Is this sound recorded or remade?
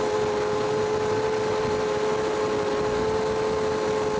recorded